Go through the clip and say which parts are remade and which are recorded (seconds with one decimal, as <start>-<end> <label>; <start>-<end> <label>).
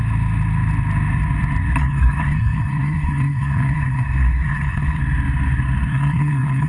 0.0-1.8 recorded; 1.8-5.0 remade; 5.0-5.9 recorded; 5.9-6.7 remade